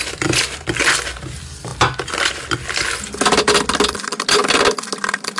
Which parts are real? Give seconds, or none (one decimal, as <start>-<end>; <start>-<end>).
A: 0.0-5.4